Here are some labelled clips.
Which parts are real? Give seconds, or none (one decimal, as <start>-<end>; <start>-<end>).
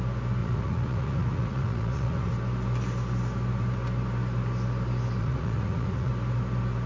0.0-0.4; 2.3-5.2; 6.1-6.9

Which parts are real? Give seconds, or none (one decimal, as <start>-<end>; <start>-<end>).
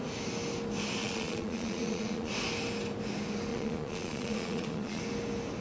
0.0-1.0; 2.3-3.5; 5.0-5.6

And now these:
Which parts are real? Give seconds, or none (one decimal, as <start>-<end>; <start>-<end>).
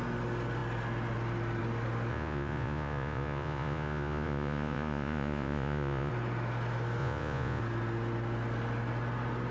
0.0-2.1; 6.1-7.0; 7.6-9.5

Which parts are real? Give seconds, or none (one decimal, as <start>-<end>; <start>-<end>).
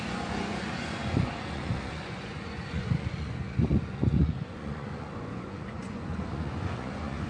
none